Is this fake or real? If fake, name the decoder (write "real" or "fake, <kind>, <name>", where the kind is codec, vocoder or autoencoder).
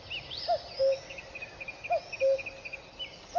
real